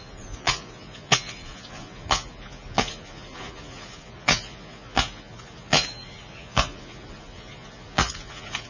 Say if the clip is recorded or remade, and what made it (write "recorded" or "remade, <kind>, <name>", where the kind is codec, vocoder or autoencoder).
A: remade, vocoder, Vocos